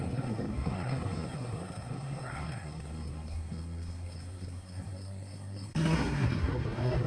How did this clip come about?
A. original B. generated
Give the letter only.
B